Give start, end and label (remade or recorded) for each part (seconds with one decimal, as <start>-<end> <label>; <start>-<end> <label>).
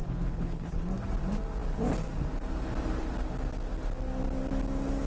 0.0-0.8 remade; 0.8-5.1 recorded